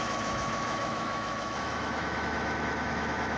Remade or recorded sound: remade